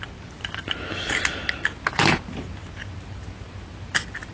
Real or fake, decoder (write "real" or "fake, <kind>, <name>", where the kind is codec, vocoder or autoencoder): real